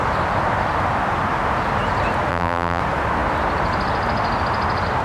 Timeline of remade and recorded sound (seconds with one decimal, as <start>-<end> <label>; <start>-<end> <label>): 0.0-2.3 recorded; 2.3-2.8 remade; 2.8-5.0 recorded

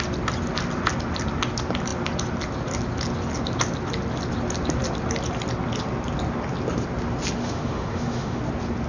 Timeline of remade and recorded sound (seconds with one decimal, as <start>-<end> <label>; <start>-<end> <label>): 0.0-7.4 recorded; 7.4-8.4 remade; 8.4-8.9 recorded

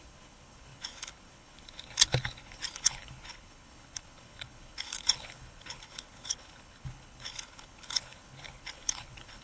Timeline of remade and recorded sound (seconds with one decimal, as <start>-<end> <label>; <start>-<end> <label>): 0.0-9.4 remade

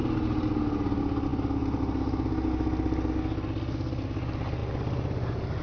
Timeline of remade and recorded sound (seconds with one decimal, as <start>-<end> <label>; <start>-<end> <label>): 0.0-5.6 recorded

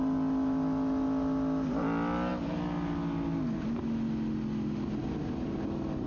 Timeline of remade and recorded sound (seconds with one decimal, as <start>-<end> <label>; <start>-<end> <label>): 0.0-6.1 recorded